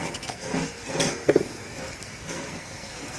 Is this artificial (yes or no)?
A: yes